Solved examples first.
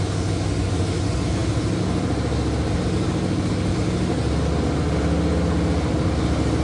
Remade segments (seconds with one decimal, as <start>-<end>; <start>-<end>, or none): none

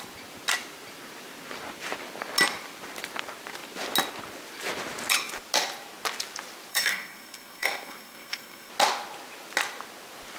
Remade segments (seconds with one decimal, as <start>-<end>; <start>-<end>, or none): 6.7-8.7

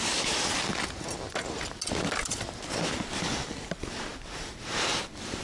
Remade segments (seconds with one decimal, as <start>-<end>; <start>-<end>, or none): none

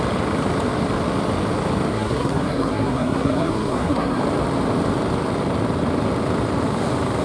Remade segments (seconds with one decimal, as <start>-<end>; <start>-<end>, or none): 1.9-4.2

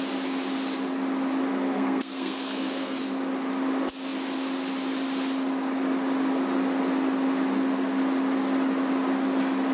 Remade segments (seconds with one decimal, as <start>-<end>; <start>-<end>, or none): 1.5-3.0